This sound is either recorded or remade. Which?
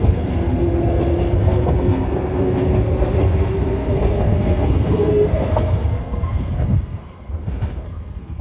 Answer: remade